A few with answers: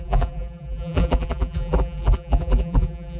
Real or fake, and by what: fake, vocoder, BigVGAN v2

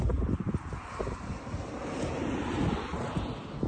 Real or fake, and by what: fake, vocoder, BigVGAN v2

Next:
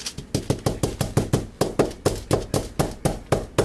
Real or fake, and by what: real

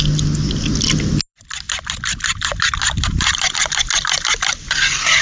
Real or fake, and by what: real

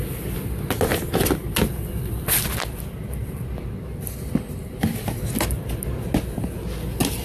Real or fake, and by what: real